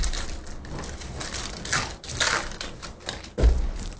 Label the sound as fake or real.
real